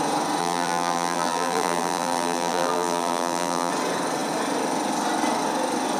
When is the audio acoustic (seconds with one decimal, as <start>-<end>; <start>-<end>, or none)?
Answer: 0.0-0.4; 3.7-6.0